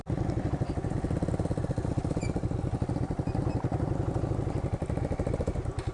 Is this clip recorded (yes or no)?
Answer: yes